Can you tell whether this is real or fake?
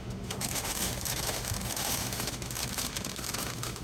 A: fake